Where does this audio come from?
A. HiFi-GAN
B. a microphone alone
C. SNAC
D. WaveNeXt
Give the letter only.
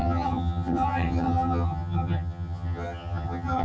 A